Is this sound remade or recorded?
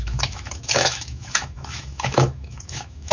remade